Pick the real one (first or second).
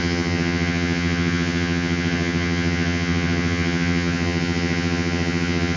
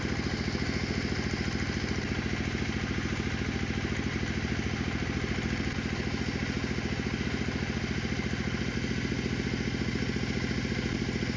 second